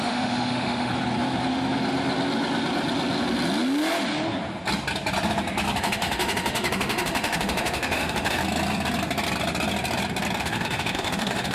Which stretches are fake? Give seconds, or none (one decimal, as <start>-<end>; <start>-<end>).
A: 0.0-0.9; 5.8-8.4; 10.4-11.5

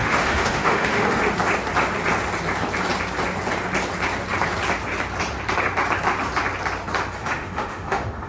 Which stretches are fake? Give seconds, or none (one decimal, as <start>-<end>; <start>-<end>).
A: 0.0-1.2; 7.2-8.3

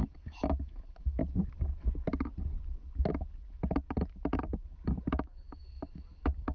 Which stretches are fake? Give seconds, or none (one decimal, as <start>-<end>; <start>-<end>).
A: 0.0-1.2; 5.1-6.5

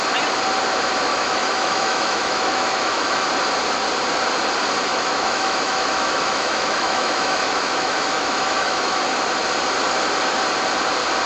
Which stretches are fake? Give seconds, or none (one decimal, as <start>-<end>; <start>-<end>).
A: 1.1-3.3; 4.9-9.0

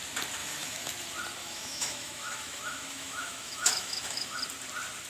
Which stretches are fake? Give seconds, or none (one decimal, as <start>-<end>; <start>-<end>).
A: 0.4-0.9; 1.4-4.4

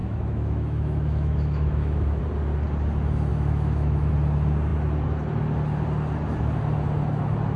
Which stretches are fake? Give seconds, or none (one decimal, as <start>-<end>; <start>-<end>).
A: 0.0-2.2; 3.3-4.1

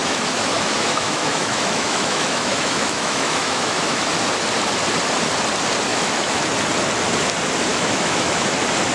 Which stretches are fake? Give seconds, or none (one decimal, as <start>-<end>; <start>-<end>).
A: 0.0-4.0; 5.9-6.4; 7.7-8.4

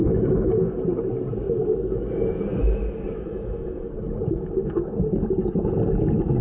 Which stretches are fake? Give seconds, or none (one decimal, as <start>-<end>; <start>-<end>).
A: 0.0-0.8; 1.6-3.9